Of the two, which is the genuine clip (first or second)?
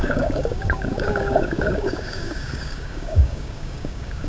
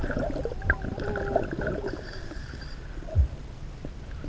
second